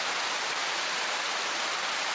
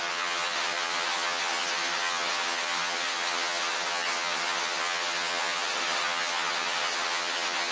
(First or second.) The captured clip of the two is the first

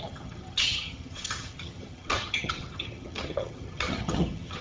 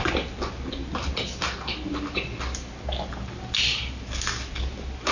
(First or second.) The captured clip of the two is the second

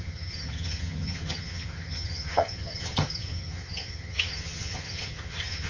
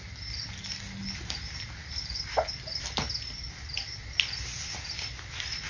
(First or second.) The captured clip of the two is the second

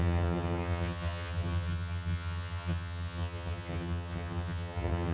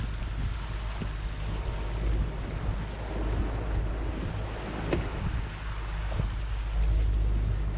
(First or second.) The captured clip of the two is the second